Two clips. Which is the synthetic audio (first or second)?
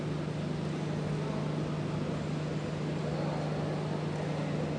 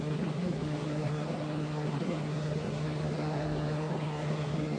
second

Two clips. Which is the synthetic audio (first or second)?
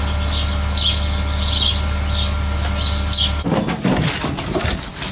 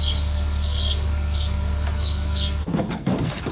second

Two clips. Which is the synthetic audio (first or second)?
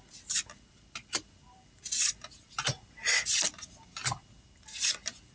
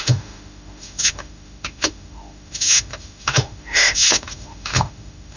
second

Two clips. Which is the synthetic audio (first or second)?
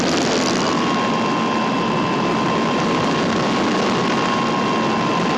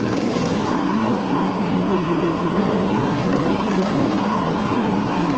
second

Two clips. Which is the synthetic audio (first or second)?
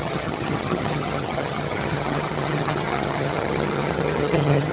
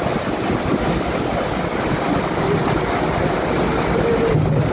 first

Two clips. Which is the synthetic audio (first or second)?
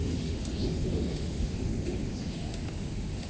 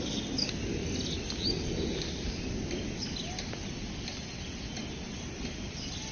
first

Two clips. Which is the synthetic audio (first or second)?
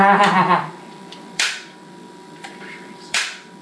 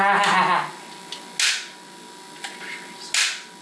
first